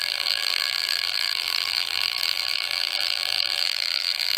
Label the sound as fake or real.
fake